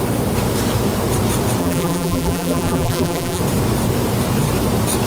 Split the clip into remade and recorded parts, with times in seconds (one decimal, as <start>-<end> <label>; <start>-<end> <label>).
0.0-1.6 recorded; 1.6-3.4 remade; 3.4-5.1 recorded